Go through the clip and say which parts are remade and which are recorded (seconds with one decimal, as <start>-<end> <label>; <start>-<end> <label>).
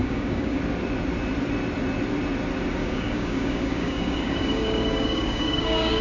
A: 0.0-0.6 remade; 0.6-2.8 recorded; 2.8-6.0 remade